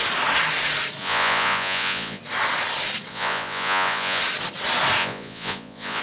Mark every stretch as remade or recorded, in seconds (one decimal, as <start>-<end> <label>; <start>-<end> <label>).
0.0-1.0 recorded; 1.0-2.2 remade; 2.2-3.1 recorded; 3.1-4.2 remade; 4.2-5.0 recorded; 5.0-6.0 remade